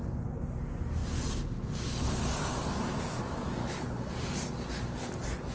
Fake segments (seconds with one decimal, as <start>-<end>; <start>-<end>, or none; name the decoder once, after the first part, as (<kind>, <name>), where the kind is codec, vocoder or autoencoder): 3.6-4.1 (codec, HILCodec)